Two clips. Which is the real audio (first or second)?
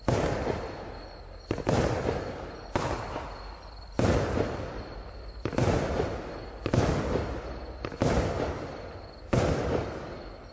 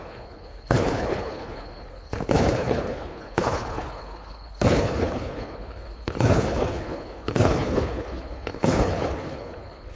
first